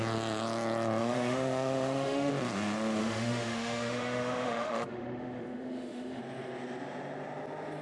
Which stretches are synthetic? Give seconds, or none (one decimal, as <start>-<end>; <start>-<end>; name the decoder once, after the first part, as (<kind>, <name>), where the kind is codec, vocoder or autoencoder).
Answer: 1.0-2.3 (autoencoder, DAC-VAE); 3.0-6.2

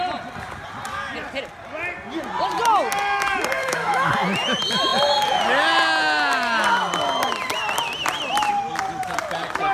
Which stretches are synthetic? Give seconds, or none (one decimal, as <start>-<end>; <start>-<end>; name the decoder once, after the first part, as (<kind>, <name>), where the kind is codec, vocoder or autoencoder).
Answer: 3.6-4.1 (autoencoder, DAC-VAE)

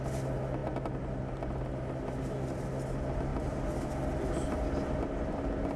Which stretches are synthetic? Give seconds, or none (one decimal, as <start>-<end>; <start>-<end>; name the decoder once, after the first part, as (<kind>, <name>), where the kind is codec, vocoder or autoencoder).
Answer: none

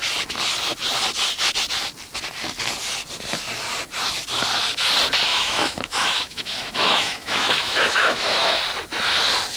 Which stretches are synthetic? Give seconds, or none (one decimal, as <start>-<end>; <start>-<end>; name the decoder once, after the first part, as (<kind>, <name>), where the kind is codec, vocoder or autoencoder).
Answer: 5.3-8.6 (autoencoder, DAC-VAE)

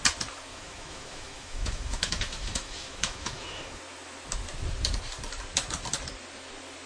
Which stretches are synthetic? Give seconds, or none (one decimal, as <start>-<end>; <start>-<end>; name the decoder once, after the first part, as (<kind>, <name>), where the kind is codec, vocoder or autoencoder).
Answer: 0.5-3.8 (autoencoder, DAC-VAE)

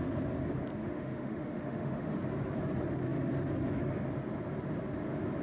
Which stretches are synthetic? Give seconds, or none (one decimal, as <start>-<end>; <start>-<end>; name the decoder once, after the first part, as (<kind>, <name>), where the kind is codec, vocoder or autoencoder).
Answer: 0.8-2.2 (autoencoder, DAC-VAE)

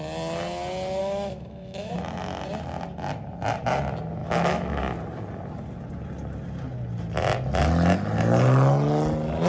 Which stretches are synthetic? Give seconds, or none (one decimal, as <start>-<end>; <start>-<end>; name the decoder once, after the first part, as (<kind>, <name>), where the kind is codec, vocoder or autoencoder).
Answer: 1.0-1.9 (autoencoder, DAC-VAE); 4.2-4.8

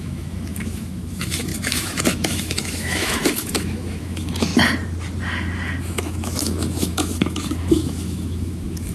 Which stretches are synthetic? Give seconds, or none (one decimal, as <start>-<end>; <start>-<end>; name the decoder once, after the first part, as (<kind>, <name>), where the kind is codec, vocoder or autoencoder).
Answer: 0.0-4.5 (autoencoder, DAC-VAE); 5.8-8.9